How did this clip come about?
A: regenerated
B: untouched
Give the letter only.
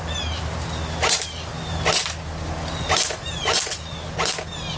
B